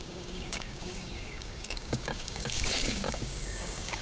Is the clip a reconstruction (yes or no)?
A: yes